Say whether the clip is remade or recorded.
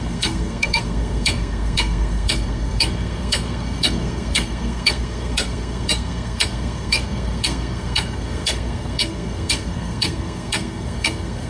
remade